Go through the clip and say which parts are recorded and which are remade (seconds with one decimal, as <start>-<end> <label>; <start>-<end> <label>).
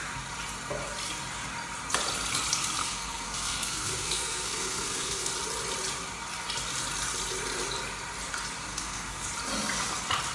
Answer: 0.0-2.8 recorded; 2.8-5.3 remade; 5.3-8.7 recorded; 8.7-9.3 remade; 9.3-10.3 recorded